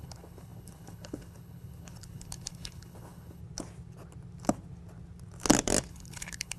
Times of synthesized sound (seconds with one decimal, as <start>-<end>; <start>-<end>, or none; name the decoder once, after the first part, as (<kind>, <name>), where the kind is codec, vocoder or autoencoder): 0.0-3.4 (codec, HILCodec); 5.9-6.6